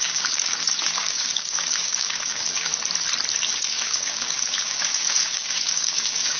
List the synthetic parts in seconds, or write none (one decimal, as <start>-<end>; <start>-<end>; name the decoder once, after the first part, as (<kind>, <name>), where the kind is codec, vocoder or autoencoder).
0.0-2.7 (codec, DAC); 3.5-6.4